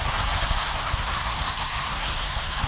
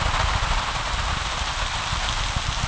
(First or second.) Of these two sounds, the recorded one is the second